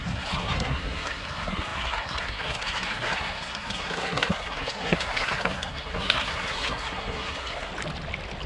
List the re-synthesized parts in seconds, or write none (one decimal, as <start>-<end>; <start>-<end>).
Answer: 0.0-7.7